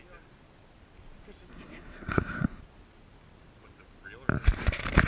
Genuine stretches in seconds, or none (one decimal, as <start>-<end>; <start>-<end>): 0.0-1.5; 2.6-5.1